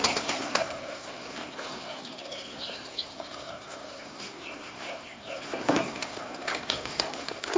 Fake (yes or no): yes